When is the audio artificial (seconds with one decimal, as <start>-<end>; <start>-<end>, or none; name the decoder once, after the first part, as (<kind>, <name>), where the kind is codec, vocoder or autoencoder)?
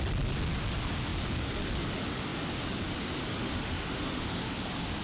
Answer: 3.4-4.5 (autoencoder, DAC-VAE)